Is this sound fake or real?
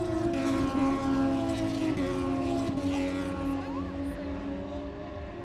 real